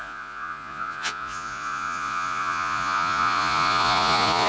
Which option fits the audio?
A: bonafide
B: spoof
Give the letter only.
B